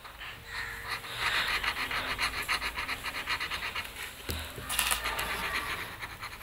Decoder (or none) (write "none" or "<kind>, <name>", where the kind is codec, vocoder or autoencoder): none